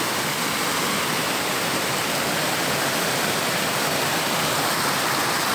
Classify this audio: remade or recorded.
remade